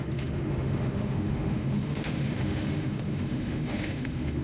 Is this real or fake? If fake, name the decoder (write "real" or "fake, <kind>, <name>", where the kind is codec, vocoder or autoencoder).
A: fake, autoencoder, DAC-VAE